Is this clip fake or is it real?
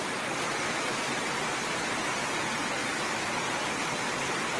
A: fake